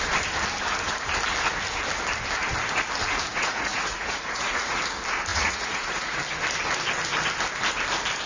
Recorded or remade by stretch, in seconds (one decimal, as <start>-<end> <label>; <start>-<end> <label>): 0.0-3.3 recorded; 3.3-4.8 remade; 4.8-5.3 recorded; 5.3-6.2 remade; 6.2-8.3 recorded